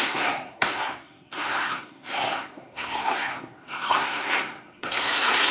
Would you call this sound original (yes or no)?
no